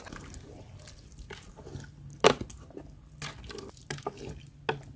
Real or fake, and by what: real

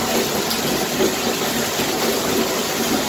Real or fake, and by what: real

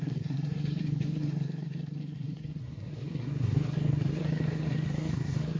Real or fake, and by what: fake, codec, SNAC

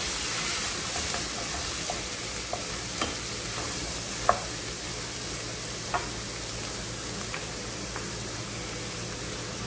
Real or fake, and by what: real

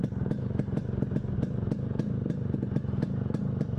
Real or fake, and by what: fake, vocoder, BigVGAN v2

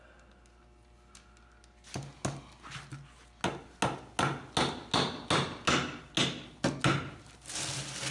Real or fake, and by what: real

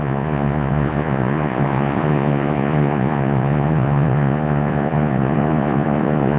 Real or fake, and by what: fake, vocoder, Vocos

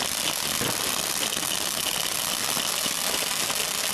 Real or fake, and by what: real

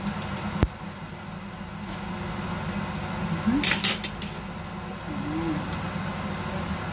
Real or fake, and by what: real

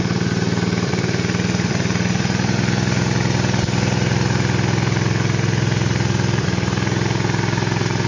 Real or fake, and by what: real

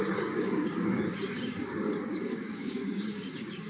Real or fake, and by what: fake, codec, DAC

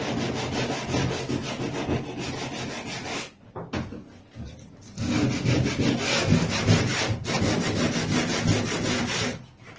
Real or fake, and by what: real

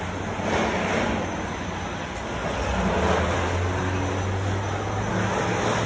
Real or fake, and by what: real